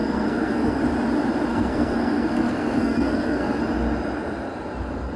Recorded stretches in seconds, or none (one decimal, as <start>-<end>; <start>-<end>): 0.8-1.5; 3.6-5.2